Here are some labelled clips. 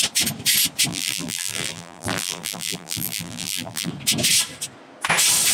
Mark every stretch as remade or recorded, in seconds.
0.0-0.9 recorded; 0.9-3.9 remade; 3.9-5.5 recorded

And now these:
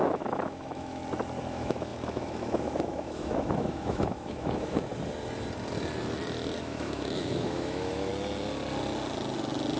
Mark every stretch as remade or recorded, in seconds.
0.0-1.0 remade; 1.0-1.5 recorded; 1.5-4.9 remade; 4.9-6.6 recorded; 6.6-8.1 remade; 8.1-9.8 recorded

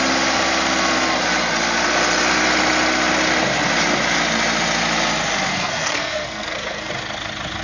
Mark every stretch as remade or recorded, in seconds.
0.0-5.5 recorded; 5.5-6.9 remade; 6.9-7.6 recorded

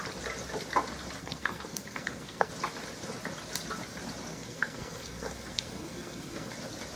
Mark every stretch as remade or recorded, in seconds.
0.0-1.2 recorded; 1.2-2.5 remade; 2.5-4.3 recorded; 4.3-6.5 remade; 6.5-7.0 recorded

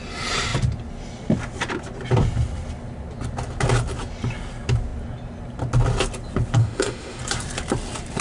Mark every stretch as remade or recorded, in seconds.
0.0-6.6 recorded; 6.6-7.2 remade; 7.2-8.2 recorded

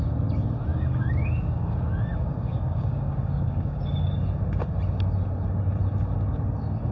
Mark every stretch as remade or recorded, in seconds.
0.0-0.7 recorded; 0.7-4.1 remade; 4.1-6.9 recorded

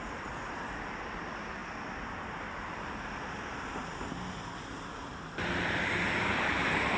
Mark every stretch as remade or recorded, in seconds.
0.0-1.6 remade; 1.6-5.1 recorded; 5.1-7.0 remade